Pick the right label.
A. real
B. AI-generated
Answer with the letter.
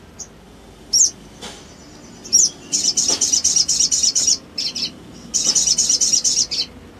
A